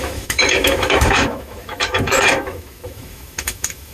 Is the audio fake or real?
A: fake